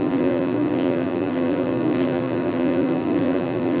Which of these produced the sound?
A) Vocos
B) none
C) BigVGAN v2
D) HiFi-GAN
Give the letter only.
C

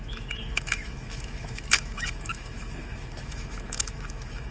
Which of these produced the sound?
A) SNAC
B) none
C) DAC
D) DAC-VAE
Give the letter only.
D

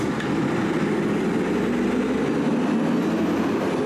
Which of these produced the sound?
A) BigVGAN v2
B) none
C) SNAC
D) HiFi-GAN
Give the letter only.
B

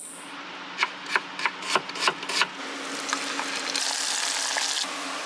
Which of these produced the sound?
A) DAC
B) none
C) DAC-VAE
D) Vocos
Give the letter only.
B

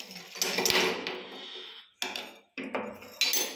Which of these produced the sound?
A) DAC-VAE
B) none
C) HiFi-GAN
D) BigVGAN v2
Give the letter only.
B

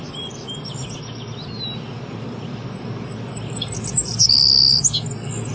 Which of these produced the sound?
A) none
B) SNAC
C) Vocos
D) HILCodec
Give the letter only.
A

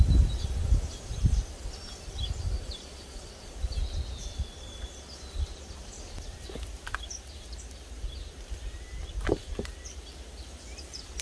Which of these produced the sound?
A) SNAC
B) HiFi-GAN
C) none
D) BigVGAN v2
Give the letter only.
D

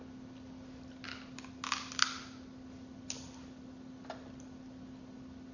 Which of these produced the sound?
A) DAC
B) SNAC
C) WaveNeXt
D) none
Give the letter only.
D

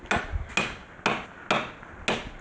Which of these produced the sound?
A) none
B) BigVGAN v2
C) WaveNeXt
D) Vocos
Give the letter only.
A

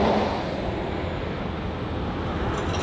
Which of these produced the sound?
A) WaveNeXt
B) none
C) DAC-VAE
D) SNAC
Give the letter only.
B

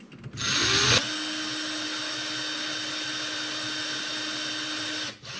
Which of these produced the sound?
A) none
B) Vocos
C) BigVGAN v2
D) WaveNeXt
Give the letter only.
A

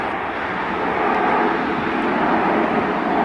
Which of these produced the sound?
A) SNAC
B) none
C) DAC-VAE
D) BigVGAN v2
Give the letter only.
B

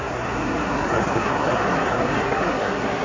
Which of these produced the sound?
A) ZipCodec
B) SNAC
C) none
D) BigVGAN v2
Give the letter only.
B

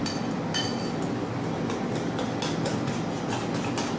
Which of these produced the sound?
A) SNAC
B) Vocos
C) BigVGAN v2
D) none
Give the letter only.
D